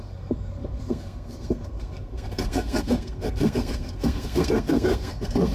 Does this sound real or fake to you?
fake